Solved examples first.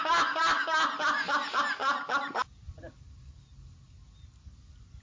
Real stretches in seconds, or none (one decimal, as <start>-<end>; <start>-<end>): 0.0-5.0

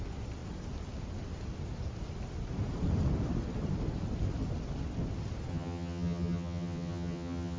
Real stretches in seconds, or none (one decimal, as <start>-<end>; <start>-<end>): 0.0-5.5

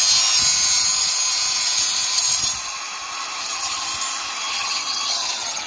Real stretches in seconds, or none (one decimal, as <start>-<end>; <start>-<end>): 0.0-3.4; 3.9-4.5

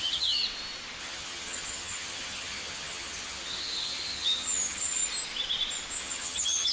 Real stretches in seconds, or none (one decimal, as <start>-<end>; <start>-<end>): 0.4-1.0; 5.0-6.0

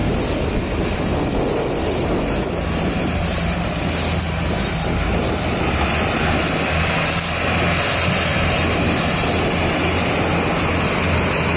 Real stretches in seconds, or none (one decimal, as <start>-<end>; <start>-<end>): 0.0-11.6

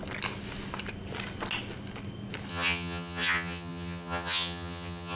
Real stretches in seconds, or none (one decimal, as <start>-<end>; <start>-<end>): 0.0-2.5

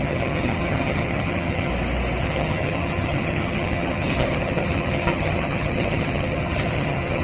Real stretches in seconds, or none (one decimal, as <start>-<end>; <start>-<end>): 1.7-2.2

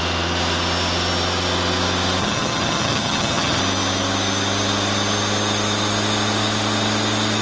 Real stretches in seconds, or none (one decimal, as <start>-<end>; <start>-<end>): 0.0-2.2; 3.6-7.4